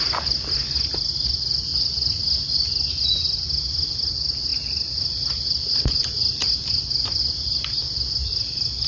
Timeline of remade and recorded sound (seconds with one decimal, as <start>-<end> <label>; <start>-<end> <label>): 0.0-8.9 recorded